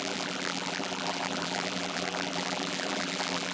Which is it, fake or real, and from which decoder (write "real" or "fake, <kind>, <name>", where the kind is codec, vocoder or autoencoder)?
fake, vocoder, BigVGAN v2